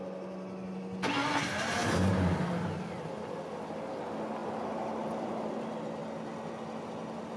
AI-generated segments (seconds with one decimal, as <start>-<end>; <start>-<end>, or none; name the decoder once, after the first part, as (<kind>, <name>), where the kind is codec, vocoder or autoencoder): none